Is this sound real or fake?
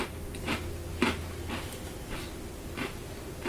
real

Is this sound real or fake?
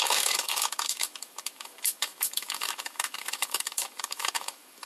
fake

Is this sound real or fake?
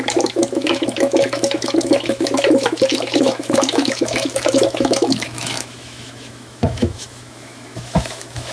fake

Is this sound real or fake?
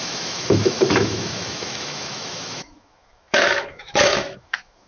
fake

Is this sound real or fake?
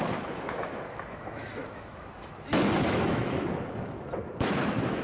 fake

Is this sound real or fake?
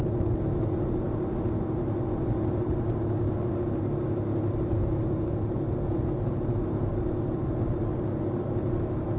real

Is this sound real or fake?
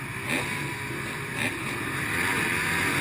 real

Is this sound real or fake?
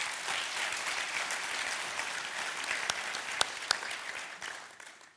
real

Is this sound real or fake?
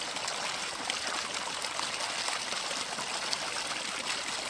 real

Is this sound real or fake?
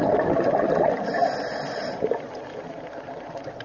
real